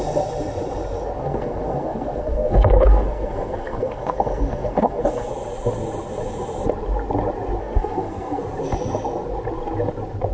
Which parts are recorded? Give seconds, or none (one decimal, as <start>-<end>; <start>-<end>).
0.0-1.2; 5.3-7.6; 8.4-10.3